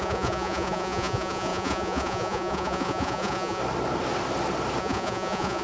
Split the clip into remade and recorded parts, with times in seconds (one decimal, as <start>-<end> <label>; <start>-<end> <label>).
0.0-3.6 remade; 3.6-4.8 recorded; 4.8-5.6 remade